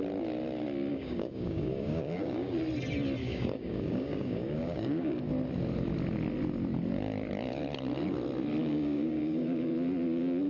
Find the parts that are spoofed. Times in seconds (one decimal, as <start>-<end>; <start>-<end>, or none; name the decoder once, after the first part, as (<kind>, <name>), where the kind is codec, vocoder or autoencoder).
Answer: 0.9-2.5 (codec, DAC); 3.2-5.2; 8.6-9.7